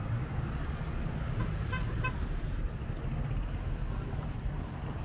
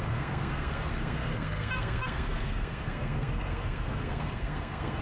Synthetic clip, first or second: second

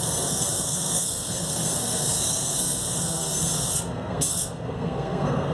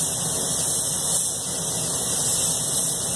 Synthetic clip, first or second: first